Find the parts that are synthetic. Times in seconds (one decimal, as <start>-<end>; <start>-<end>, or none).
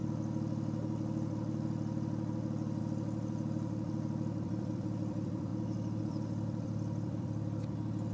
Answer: 2.8-5.5; 6.0-8.1